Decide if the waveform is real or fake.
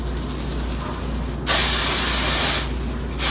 real